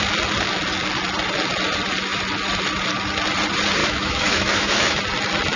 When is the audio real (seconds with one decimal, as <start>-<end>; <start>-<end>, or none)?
0.0-3.8; 5.0-5.6

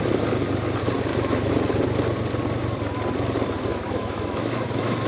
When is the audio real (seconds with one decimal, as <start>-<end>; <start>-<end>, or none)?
0.0-1.1; 1.6-3.7

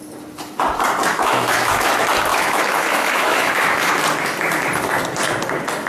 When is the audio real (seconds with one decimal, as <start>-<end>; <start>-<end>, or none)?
0.0-1.0; 1.9-2.3; 3.9-5.9

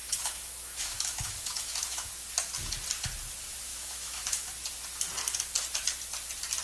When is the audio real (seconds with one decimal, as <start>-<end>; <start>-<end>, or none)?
2.1-3.7; 4.5-6.6

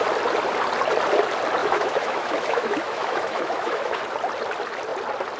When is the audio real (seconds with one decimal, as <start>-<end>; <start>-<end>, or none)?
0.0-1.6; 4.0-5.4

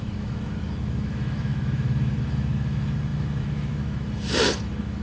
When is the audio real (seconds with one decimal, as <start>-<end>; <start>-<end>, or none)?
none

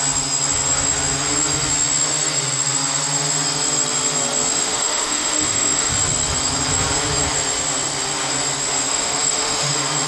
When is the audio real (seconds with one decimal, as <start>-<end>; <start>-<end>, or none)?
0.0-4.5; 5.9-8.9; 9.7-10.1

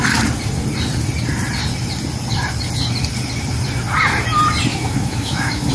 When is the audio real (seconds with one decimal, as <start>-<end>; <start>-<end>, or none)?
0.0-4.7